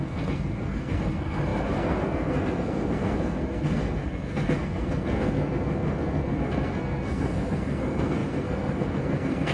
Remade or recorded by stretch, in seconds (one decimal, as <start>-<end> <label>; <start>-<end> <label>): 0.0-9.5 remade